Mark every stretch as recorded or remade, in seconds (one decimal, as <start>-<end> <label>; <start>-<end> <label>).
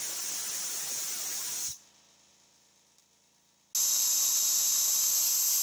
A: 0.0-5.6 recorded